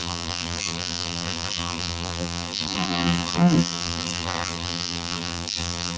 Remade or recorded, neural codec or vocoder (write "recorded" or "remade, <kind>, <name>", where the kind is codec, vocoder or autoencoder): remade, vocoder, BigVGAN v2